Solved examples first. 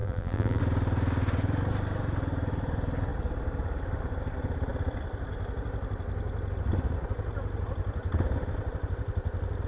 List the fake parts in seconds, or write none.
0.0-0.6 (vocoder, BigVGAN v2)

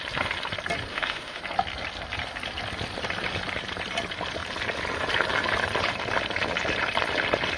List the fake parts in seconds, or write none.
0.9-1.4 (autoencoder, DAC-VAE)